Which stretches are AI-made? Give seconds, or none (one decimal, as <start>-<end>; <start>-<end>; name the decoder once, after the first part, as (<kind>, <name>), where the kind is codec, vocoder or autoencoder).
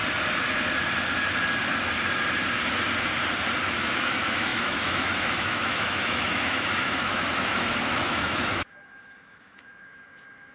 3.6-10.5 (autoencoder, DAC-VAE)